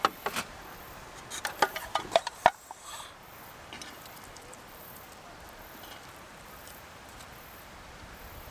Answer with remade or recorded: remade